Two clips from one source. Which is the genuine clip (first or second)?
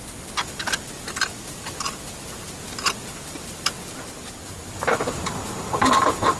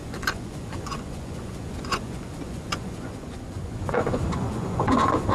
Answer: first